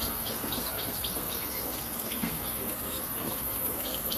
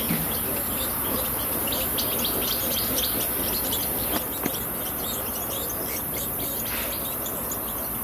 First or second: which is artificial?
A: first